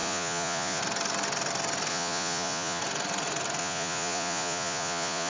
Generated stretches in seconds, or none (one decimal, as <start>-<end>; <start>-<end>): 0.0-0.8; 1.9-2.8; 3.6-5.3